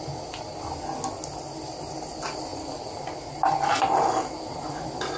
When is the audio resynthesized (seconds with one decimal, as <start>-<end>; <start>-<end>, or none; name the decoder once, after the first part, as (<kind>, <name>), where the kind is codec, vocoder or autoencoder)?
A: none